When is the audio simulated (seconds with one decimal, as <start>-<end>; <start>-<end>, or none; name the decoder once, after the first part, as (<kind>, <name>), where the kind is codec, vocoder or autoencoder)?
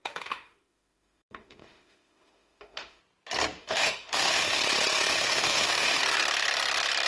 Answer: 0.0-3.0 (autoencoder, DAC-VAE); 3.6-4.6; 5.1-6.0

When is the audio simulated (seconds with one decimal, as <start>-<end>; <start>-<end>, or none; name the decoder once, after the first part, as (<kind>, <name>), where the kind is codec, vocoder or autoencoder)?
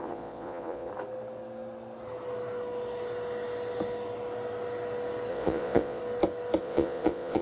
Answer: 0.0-0.9 (vocoder, Vocos); 5.3-6.0; 6.6-7.4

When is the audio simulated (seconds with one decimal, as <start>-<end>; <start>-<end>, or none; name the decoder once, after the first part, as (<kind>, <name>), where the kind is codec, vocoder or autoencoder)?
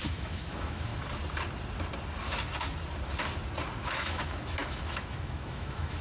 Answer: 0.0-0.9 (autoencoder, DAC-VAE); 3.8-6.0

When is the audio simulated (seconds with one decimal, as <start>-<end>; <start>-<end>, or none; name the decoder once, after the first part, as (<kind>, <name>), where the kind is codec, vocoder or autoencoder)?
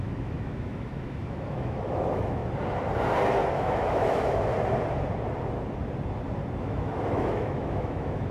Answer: 0.0-2.4 (autoencoder, DAC-VAE); 3.5-4.5; 6.6-8.3